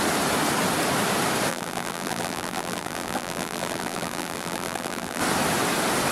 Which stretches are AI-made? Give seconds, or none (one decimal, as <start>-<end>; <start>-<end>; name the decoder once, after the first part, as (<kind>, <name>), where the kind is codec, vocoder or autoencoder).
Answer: 1.5-5.2 (vocoder, BigVGAN v2)